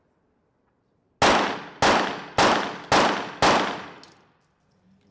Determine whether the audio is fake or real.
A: real